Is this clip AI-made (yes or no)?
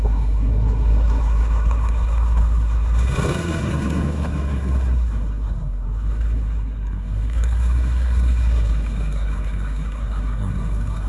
yes